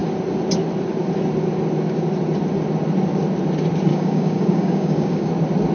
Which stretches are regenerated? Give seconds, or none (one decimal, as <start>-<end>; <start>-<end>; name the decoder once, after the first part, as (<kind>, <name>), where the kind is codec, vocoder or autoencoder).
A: 3.9-5.3 (codec, DAC)